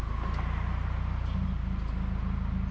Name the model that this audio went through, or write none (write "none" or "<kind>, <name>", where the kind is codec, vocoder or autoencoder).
none